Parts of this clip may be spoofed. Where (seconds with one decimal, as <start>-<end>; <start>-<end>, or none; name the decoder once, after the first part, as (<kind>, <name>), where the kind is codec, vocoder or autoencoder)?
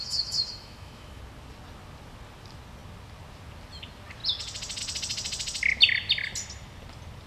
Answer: 0.0-1.2 (autoencoder, DAC-VAE)